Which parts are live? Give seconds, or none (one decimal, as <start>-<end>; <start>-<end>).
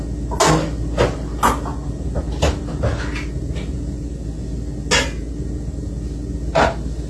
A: 0.0-7.1